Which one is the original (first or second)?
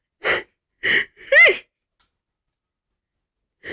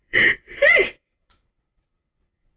first